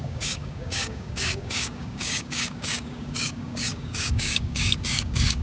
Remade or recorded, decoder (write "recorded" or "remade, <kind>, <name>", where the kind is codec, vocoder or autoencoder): remade, codec, DAC